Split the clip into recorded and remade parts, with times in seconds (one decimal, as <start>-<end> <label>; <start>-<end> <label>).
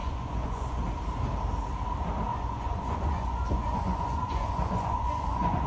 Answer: 0.0-0.8 remade; 0.8-2.3 recorded; 2.3-5.7 remade